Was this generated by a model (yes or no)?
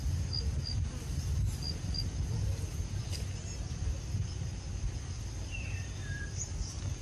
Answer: no